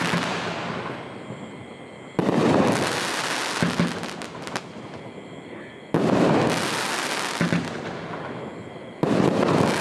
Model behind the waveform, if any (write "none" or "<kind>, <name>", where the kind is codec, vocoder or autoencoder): none